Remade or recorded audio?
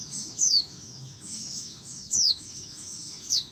remade